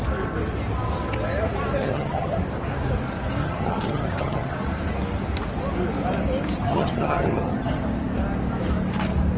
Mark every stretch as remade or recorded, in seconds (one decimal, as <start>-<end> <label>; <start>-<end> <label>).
0.0-1.8 recorded; 1.8-2.3 remade; 2.3-3.4 recorded; 3.4-4.5 remade; 4.5-6.6 recorded; 6.6-7.8 remade; 7.8-9.4 recorded